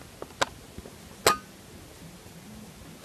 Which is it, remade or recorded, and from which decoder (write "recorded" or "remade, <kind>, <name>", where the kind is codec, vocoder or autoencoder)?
recorded